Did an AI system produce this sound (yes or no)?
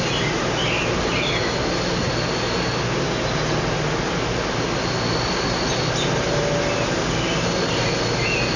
no